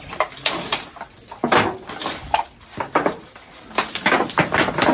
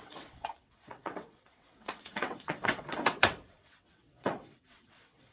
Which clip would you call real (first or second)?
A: first